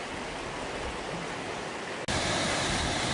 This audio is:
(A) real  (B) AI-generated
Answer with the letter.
A